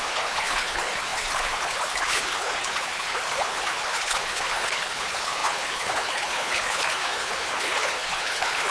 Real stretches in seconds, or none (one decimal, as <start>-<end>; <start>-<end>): none